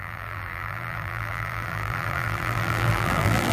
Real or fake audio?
fake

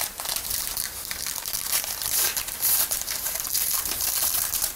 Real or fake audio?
fake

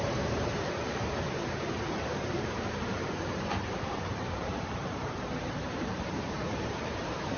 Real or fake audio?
fake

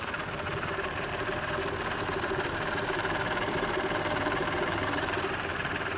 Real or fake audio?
fake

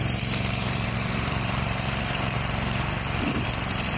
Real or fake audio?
fake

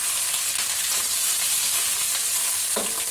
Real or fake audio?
fake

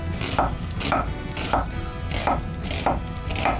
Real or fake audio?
real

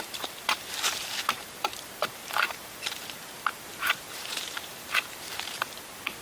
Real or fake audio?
fake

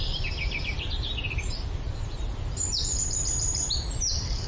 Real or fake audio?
fake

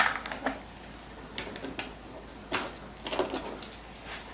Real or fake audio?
real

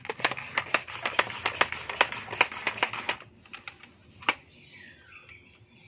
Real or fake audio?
real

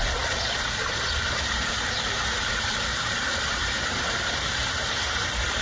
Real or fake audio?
fake